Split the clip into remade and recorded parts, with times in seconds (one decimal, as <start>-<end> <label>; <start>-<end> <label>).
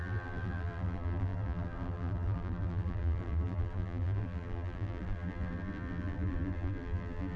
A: 0.0-7.4 remade